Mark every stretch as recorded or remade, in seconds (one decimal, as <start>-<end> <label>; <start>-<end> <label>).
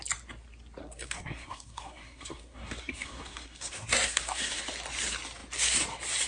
0.0-0.8 recorded; 0.8-4.6 remade; 4.6-6.3 recorded